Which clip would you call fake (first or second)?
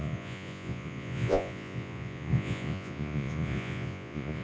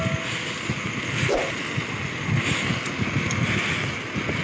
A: first